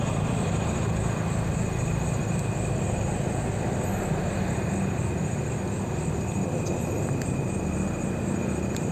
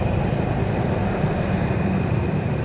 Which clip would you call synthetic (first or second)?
second